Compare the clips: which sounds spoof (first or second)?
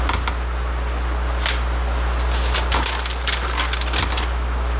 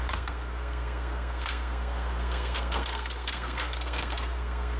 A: second